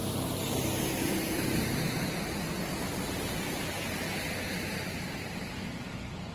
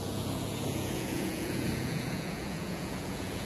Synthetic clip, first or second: second